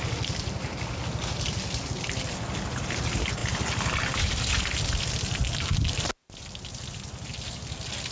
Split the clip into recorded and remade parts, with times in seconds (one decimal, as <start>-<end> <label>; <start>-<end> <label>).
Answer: 0.0-8.1 recorded